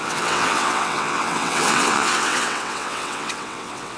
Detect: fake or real fake